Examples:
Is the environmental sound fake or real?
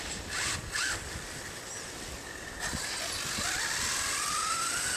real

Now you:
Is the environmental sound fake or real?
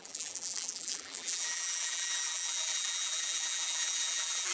fake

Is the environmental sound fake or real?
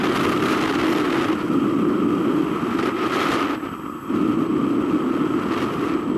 real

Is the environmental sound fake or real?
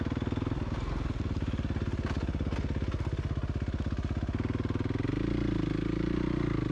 real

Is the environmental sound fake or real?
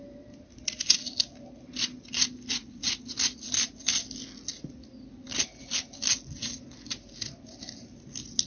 real